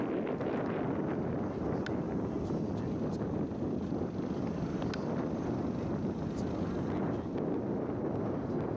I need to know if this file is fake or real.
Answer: real